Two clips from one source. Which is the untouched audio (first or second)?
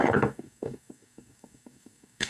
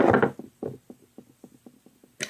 second